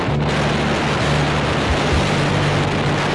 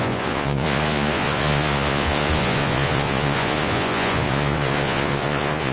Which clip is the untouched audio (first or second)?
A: first